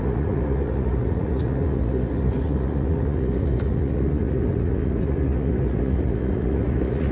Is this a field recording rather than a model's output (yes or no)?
no